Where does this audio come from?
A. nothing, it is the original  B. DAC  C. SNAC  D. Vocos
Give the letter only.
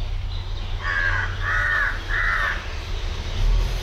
A